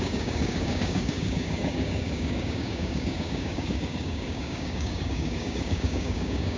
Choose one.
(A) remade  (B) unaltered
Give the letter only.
A